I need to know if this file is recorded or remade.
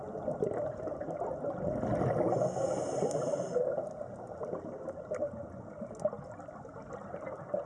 recorded